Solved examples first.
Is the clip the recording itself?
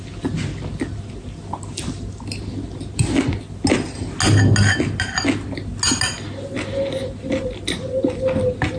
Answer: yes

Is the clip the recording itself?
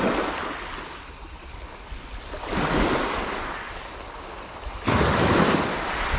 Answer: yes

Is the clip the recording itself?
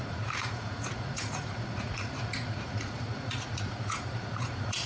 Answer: no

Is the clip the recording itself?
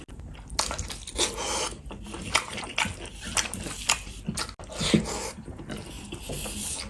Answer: yes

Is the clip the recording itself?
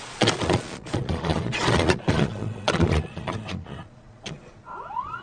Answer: no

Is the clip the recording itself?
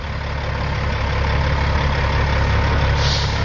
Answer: yes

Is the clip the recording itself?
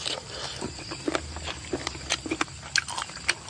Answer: yes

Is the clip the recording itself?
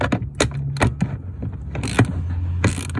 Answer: yes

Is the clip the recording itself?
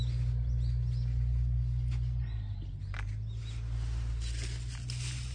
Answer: yes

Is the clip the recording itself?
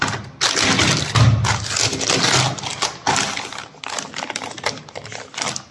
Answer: yes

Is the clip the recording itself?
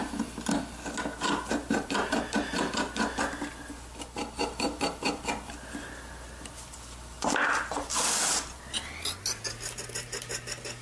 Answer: yes